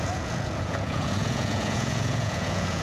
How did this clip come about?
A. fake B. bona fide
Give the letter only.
A